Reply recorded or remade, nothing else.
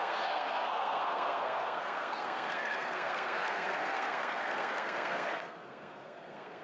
remade